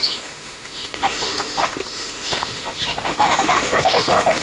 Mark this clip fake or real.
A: fake